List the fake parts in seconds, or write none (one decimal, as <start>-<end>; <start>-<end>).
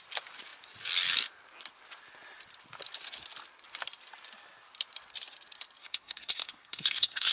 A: 5.8-7.3